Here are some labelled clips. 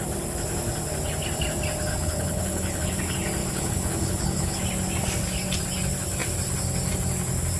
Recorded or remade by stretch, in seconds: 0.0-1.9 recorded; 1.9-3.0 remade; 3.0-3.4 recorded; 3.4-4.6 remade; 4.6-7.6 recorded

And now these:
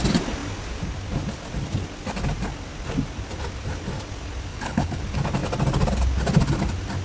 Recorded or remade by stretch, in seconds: 0.0-4.5 recorded; 4.5-5.0 remade; 5.0-7.0 recorded

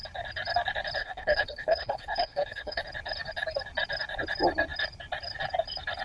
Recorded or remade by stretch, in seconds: 0.0-1.0 recorded; 1.0-2.8 remade; 2.8-6.0 recorded

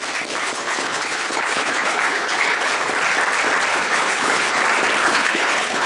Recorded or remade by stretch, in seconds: 0.0-0.4 recorded; 0.4-2.7 remade; 2.7-3.7 recorded; 3.7-4.6 remade; 4.6-5.0 recorded; 5.0-5.9 remade

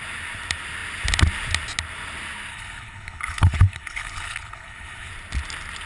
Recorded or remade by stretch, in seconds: 0.0-2.5 recorded; 2.5-5.1 remade; 5.1-5.9 recorded

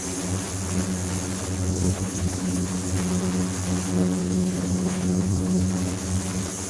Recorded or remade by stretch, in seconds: 0.0-1.7 recorded; 1.7-2.7 remade; 2.7-4.2 recorded; 4.2-5.7 remade; 5.7-6.7 recorded